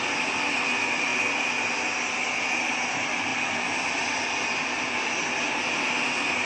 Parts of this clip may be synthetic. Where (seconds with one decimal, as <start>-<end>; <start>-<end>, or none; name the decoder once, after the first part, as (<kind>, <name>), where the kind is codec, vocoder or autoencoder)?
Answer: 3.3-5.3 (vocoder, BigVGAN v2)